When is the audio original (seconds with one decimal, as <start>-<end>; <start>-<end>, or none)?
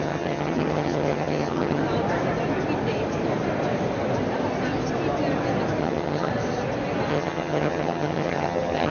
1.8-5.8; 6.3-7.1